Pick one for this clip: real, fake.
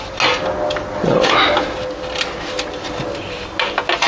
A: real